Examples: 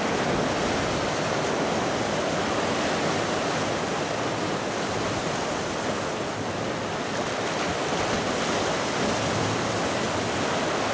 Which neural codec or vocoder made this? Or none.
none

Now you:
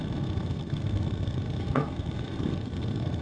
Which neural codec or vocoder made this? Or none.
codec, SNAC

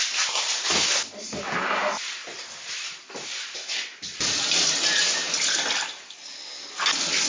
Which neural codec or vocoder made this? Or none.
vocoder, BigVGAN v2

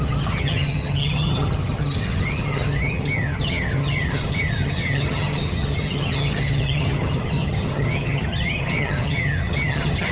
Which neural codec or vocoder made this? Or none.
vocoder, HiFi-GAN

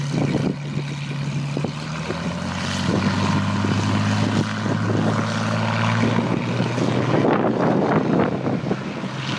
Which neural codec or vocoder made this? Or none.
none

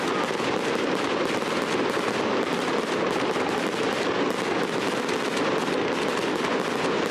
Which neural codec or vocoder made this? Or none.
none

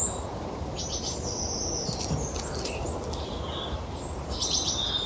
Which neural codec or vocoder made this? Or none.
none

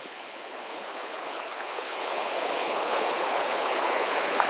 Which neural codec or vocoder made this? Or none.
codec, HILCodec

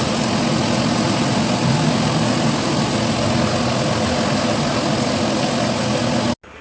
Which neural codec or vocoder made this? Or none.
none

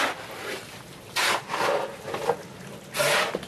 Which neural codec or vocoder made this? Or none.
none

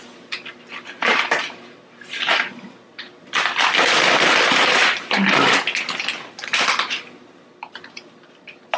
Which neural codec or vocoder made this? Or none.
none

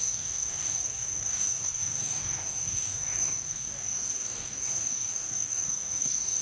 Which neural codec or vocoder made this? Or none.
codec, DAC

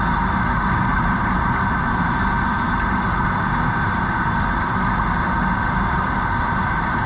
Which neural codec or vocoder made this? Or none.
none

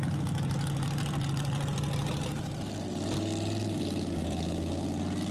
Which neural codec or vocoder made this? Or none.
none